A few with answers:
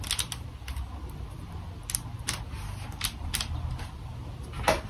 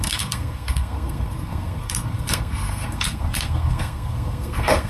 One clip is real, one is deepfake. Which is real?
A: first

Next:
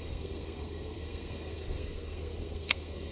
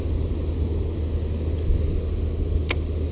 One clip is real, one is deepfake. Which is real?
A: second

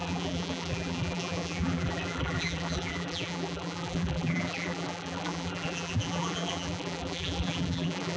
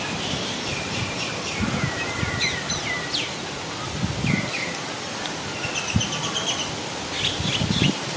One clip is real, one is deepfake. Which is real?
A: second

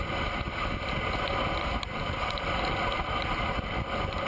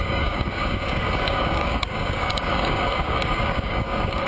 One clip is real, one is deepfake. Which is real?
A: first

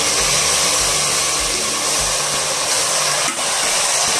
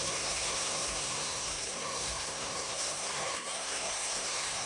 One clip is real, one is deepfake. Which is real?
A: first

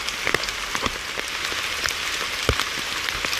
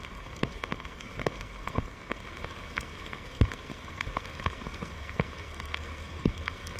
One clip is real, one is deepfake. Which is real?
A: first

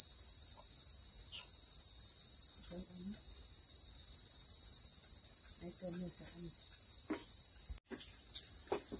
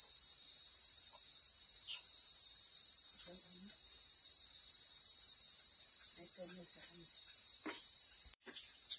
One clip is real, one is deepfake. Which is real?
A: first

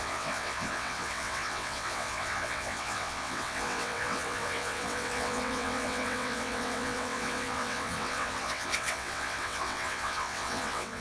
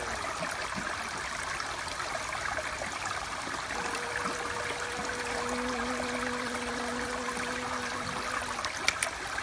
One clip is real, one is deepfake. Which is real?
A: second